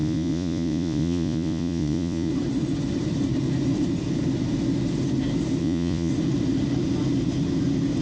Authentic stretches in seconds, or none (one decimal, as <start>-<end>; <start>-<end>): 2.3-5.6; 6.1-8.0